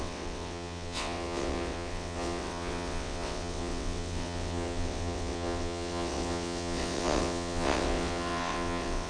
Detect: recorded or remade remade